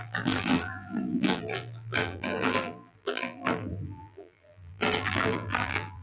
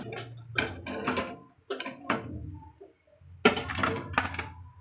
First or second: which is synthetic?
first